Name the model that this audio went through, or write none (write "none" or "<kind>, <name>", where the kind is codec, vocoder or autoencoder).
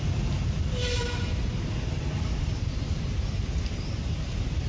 vocoder, BigVGAN v2